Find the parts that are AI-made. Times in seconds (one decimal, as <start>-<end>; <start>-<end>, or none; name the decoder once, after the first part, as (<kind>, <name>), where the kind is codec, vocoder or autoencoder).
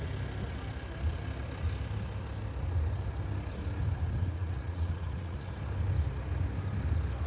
4.2-5.5 (vocoder, Vocos)